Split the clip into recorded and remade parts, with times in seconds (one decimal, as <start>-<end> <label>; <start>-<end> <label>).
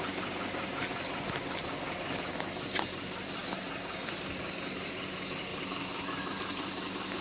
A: 0.0-7.2 recorded